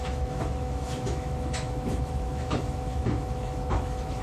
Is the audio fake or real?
fake